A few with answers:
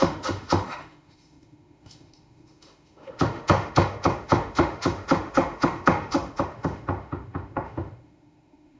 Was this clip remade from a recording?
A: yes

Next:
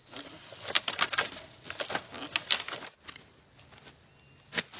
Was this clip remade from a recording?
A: no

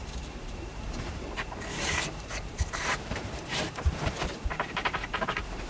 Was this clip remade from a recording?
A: yes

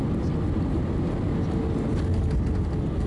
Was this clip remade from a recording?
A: no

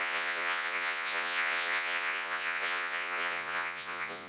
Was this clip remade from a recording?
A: yes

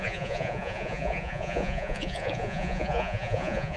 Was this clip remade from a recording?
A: yes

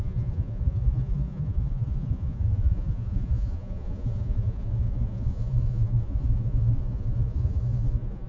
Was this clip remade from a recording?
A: yes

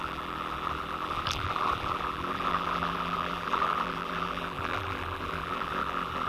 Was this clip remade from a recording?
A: yes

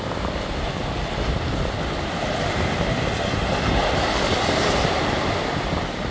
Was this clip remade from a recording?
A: no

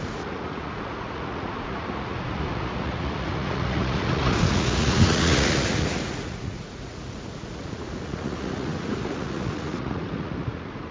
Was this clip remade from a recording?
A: yes